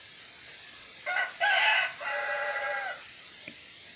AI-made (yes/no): no